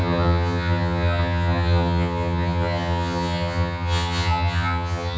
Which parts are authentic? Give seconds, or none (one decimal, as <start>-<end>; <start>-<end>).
none